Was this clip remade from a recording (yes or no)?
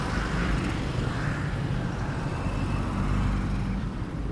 yes